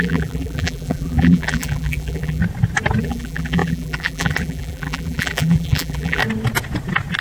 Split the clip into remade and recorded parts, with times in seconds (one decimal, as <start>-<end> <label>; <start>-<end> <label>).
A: 0.0-2.4 remade; 2.4-3.0 recorded; 3.0-6.2 remade; 6.2-7.2 recorded